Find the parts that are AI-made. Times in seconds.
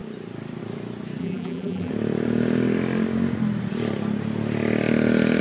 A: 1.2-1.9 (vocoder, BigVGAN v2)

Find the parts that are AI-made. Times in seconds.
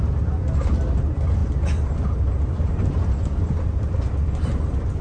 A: none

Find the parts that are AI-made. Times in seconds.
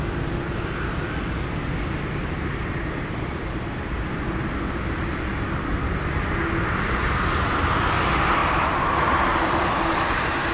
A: 2.2-4.1 (vocoder, BigVGAN v2); 8.4-10.5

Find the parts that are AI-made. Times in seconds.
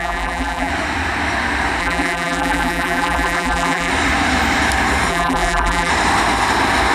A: 0.0-0.7 (vocoder, BigVGAN v2); 1.8-3.9; 5.1-5.9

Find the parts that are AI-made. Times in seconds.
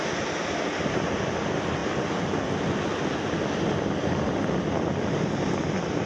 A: none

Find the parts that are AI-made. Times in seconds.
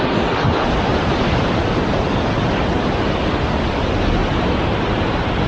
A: 0.9-1.6 (vocoder, BigVGAN v2); 4.2-5.0